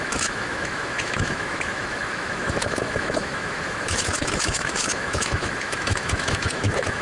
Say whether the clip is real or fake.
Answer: fake